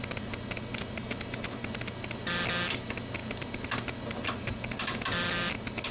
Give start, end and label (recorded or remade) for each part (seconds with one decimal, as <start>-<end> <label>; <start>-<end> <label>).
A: 0.0-5.9 recorded